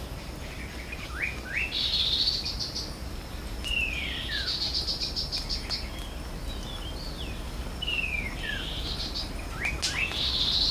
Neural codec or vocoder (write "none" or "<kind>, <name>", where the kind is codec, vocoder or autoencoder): none